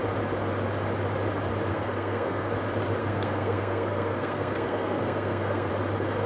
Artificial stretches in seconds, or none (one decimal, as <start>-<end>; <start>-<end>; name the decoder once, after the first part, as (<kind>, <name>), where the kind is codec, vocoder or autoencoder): 1.7-2.5 (codec, SNAC); 3.0-5.7